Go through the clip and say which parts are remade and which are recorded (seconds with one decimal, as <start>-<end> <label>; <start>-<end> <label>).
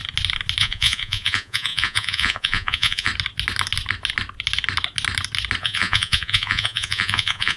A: 0.0-0.6 recorded; 0.6-3.1 remade; 3.1-5.6 recorded; 5.6-7.6 remade